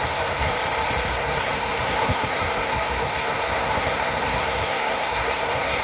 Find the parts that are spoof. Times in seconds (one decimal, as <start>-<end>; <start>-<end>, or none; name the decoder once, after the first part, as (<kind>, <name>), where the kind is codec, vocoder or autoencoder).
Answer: 0.0-0.5 (codec, SNAC); 1.1-5.8